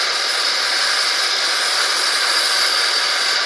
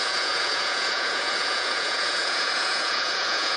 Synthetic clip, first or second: second